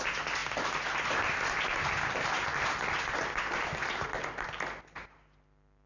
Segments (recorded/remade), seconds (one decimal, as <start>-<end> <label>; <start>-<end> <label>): 0.0-5.9 recorded